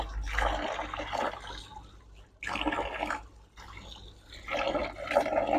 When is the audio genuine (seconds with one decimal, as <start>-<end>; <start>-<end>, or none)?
0.0-5.6